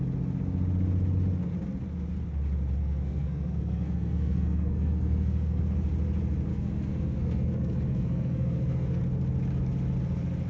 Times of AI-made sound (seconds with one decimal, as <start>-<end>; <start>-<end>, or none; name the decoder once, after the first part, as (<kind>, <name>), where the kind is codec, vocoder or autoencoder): 2.8-5.6 (codec, SNAC); 6.5-9.0